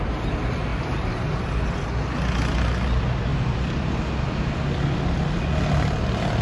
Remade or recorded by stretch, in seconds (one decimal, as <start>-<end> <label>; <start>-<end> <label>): 0.0-0.7 recorded; 0.7-1.4 remade; 1.4-3.3 recorded; 3.3-4.0 remade; 4.0-6.4 recorded